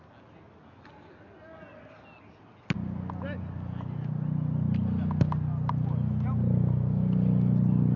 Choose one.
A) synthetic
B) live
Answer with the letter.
B